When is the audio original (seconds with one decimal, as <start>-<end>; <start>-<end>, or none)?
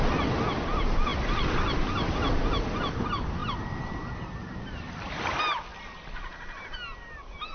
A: 0.0-3.4; 4.8-7.5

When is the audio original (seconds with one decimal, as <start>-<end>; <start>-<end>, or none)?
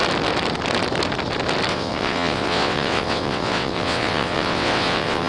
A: 0.0-1.7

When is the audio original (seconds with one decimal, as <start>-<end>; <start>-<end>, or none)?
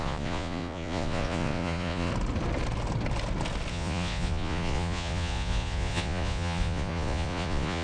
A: 2.1-3.7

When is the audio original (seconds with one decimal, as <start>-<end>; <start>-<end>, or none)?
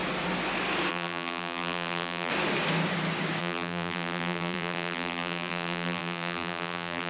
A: 0.0-0.9; 2.3-3.4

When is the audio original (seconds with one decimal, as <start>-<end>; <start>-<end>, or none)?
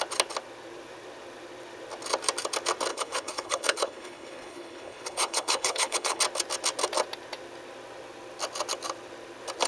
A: 0.0-2.9; 6.2-9.7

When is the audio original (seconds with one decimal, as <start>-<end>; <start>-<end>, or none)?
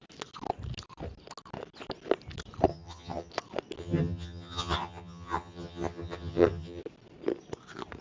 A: 0.0-2.7; 3.3-3.8; 6.8-8.0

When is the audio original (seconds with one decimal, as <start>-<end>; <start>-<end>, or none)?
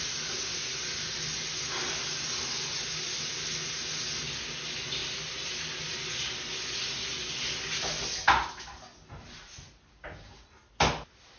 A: 0.0-11.4